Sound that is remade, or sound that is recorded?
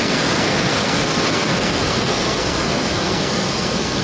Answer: remade